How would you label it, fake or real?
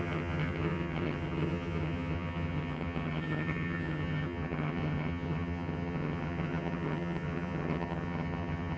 fake